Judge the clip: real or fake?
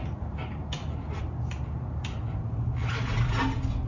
real